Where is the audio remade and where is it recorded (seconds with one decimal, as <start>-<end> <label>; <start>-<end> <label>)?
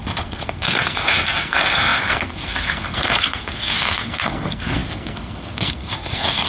0.0-6.5 remade